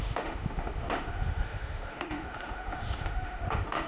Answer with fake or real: fake